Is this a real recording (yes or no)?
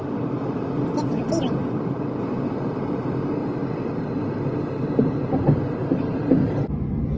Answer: yes